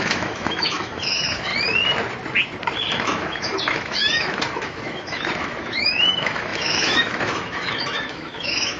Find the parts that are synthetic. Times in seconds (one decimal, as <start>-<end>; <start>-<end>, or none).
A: 0.0-1.5; 2.9-8.8